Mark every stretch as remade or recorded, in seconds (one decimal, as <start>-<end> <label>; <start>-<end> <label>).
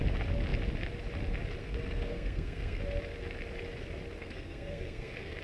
0.0-1.6 recorded; 1.6-2.8 remade; 2.8-4.2 recorded; 4.2-5.4 remade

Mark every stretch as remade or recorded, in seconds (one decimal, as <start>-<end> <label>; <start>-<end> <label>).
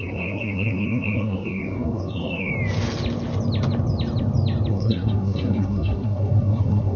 0.0-2.5 remade; 2.5-4.7 recorded; 4.7-7.0 remade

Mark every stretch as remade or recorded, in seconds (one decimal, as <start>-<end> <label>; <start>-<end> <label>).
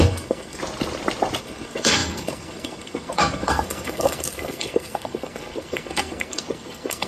0.0-0.6 remade; 0.6-1.4 recorded; 1.4-7.1 remade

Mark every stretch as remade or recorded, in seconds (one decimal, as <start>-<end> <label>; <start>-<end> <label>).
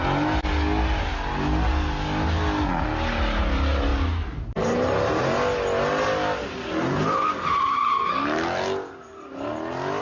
0.0-10.0 recorded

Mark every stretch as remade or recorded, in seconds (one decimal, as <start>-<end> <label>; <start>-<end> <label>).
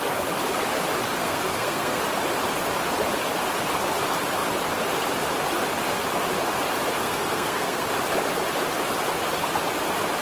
0.0-1.2 recorded; 1.2-2.0 remade; 2.0-7.0 recorded; 7.0-7.8 remade; 7.8-10.2 recorded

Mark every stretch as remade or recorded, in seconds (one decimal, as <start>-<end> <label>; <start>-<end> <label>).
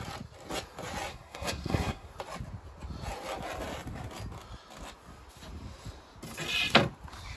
0.0-1.1 recorded; 1.1-2.1 remade; 2.1-7.4 recorded